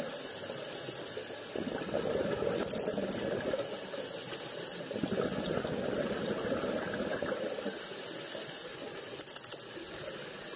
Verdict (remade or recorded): recorded